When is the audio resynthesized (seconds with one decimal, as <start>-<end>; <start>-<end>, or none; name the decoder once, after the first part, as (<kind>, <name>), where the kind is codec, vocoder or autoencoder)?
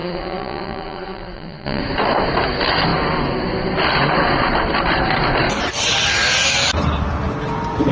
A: 0.0-1.8 (vocoder, Vocos)